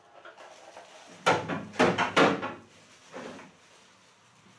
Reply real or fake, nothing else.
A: real